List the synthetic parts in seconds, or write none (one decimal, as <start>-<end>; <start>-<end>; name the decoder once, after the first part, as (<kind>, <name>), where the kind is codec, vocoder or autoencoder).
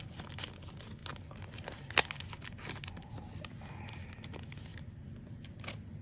none